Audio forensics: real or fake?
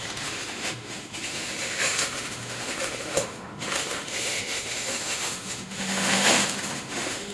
fake